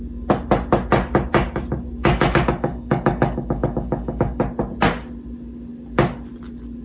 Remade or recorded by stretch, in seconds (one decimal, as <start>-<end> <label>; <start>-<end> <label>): 0.0-2.0 recorded; 2.0-4.4 remade; 4.4-6.8 recorded